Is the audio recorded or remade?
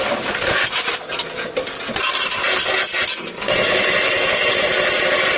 recorded